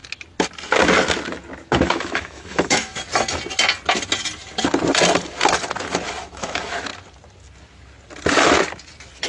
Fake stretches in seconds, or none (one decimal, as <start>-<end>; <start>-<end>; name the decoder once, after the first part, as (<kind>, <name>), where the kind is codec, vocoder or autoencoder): 1.7-2.9 (autoencoder, DAC-VAE); 6.3-6.9